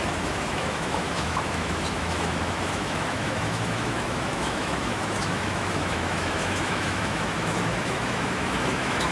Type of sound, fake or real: fake